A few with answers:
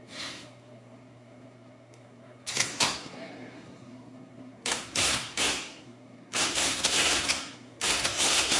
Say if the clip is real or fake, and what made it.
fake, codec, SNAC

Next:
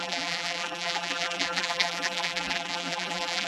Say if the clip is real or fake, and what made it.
fake, vocoder, BigVGAN v2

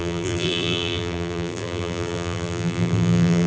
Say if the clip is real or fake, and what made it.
fake, vocoder, BigVGAN v2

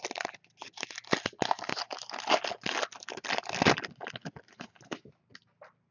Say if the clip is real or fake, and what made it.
real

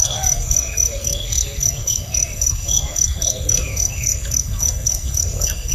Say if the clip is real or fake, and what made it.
fake, codec, SNAC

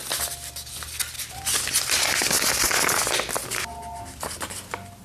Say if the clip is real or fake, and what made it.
real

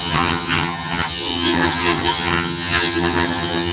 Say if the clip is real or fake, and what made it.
fake, vocoder, HiFi-GAN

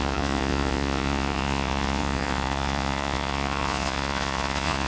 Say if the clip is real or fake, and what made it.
fake, vocoder, Vocos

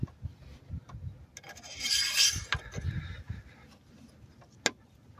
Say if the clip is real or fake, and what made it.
real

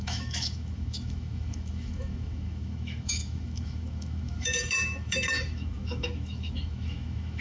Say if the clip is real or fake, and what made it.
fake, autoencoder, DAC-VAE